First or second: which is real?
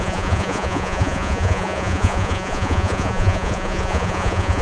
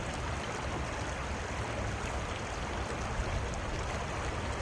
second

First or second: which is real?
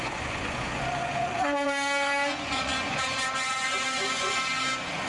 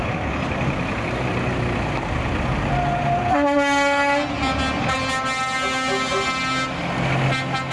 second